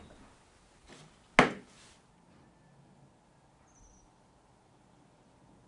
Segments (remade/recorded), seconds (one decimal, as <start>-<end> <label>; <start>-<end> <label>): 0.0-5.7 recorded